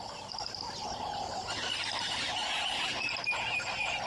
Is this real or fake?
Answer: fake